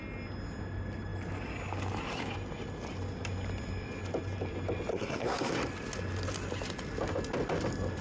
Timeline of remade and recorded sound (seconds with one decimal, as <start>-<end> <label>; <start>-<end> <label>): 0.0-4.9 recorded; 4.9-5.5 remade; 5.5-8.0 recorded